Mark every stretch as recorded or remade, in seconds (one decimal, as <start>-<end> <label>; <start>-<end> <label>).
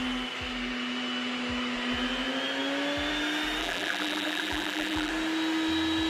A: 0.0-3.6 recorded; 3.6-5.1 remade; 5.1-6.1 recorded